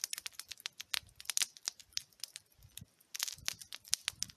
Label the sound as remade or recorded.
recorded